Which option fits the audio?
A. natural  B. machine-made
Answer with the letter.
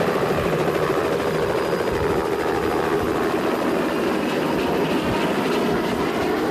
A